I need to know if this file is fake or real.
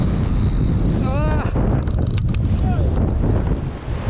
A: real